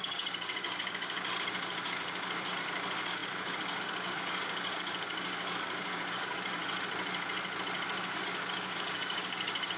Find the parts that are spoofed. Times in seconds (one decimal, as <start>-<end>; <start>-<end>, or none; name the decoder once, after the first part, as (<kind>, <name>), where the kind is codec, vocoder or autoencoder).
0.0-6.6 (codec, DAC); 8.0-9.8